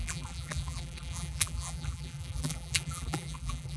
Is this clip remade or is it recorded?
remade